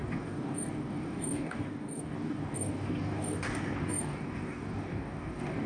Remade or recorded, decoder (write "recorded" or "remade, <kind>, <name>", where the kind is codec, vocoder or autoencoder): remade, codec, DAC